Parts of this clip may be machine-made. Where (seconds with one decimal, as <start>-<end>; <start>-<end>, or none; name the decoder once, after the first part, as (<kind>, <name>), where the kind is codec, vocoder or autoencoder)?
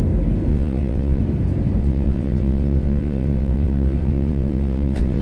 0.5-1.2 (vocoder, WaveNeXt); 1.8-5.2